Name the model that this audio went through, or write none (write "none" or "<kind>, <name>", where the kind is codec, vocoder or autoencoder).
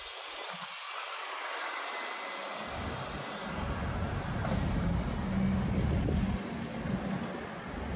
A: none